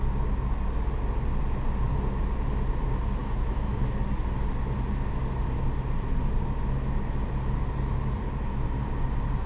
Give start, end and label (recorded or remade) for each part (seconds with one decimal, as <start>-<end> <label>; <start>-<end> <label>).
0.0-3.2 recorded; 3.2-4.0 remade; 4.0-9.5 recorded